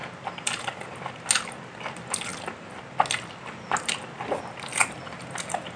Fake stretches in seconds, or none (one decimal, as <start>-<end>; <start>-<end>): none